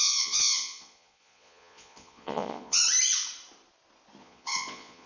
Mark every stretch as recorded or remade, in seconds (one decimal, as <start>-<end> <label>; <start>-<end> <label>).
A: 0.0-2.8 remade; 2.8-4.2 recorded; 4.2-5.1 remade